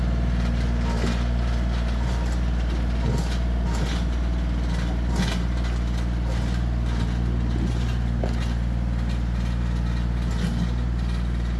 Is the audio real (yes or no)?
yes